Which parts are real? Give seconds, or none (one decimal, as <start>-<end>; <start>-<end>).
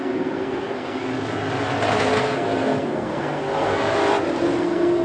1.1-2.0; 4.0-4.6